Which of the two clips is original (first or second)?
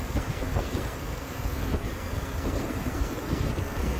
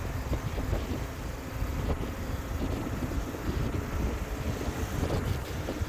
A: second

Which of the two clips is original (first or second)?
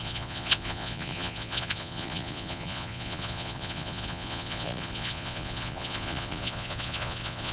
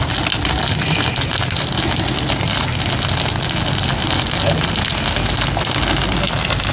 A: second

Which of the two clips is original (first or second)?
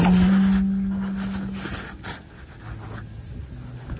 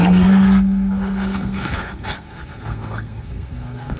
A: first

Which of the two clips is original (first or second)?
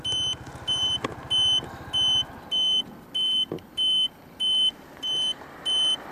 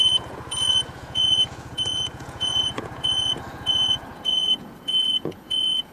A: first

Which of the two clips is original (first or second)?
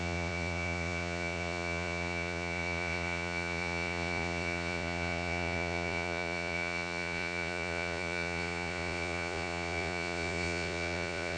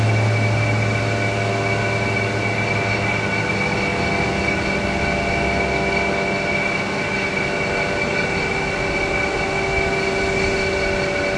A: second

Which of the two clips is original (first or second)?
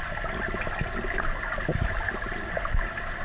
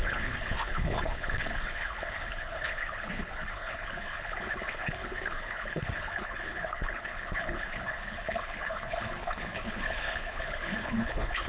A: first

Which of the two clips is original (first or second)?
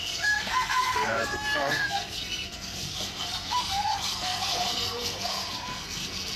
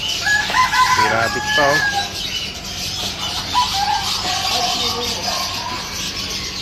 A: second